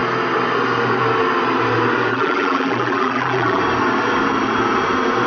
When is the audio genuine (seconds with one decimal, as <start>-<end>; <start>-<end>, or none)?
0.0-2.1; 3.6-5.3